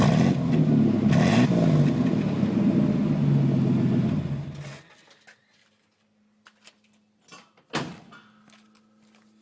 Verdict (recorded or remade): recorded